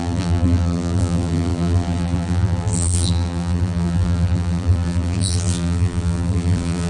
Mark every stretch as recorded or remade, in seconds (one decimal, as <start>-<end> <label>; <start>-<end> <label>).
0.0-6.9 remade